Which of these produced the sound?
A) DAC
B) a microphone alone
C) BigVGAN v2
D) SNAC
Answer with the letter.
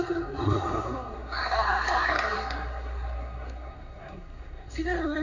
D